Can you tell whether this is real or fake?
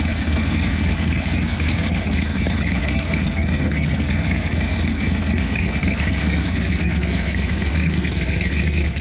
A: fake